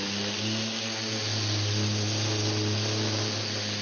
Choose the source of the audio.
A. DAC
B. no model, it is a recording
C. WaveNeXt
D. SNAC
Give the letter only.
B